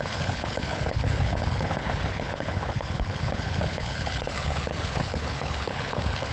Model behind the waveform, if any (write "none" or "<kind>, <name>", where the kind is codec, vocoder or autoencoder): codec, HILCodec